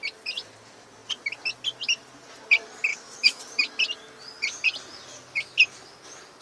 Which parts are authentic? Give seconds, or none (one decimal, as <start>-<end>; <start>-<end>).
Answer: 0.0-2.9; 3.4-6.4